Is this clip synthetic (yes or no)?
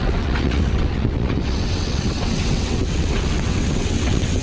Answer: yes